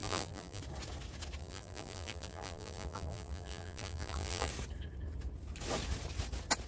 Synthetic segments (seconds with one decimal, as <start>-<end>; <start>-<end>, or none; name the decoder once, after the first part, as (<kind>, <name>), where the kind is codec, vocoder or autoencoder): 0.0-0.6 (vocoder, BigVGAN v2); 1.4-4.5